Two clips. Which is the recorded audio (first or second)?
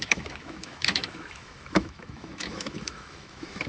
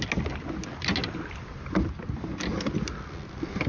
second